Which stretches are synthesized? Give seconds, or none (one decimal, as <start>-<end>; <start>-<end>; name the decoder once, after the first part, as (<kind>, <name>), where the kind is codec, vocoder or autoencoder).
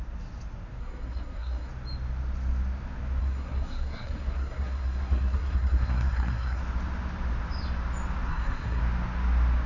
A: 0.8-1.7 (codec, SNAC); 3.2-6.6; 8.3-8.8